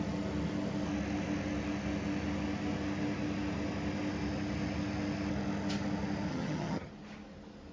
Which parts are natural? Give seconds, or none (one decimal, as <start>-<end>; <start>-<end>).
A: 0.0-6.3; 6.9-7.7